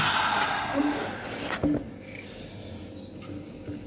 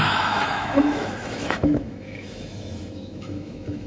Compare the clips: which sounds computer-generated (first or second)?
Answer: second